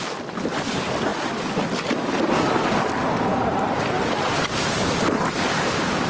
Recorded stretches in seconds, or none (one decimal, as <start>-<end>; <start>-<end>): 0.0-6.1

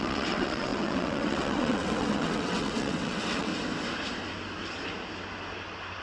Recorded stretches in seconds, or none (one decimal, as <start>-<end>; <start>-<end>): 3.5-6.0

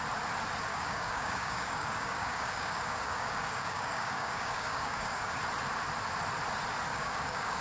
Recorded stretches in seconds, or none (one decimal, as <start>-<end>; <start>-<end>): 0.0-0.7; 5.3-6.9